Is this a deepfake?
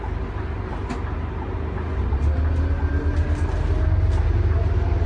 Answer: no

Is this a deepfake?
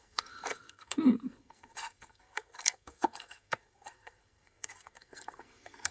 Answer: yes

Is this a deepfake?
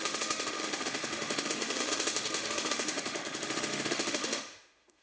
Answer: yes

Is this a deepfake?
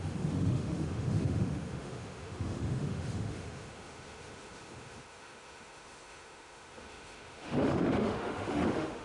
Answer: yes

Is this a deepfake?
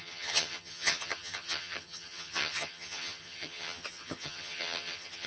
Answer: yes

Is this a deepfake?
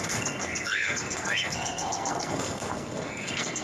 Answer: yes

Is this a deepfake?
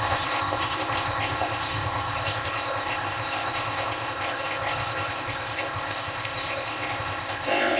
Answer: yes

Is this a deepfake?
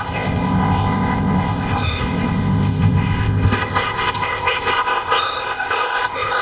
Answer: yes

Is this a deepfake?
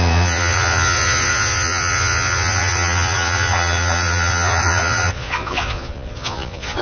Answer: yes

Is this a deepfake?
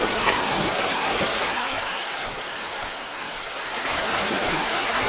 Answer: yes